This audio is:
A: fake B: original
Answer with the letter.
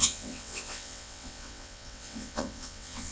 A